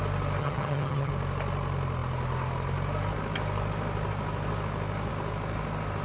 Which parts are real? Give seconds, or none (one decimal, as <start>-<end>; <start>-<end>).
0.0-0.4; 1.1-6.0